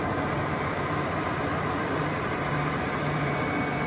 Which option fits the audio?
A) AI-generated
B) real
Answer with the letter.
A